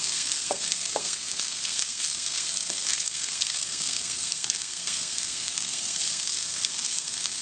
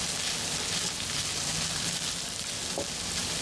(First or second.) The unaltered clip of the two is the second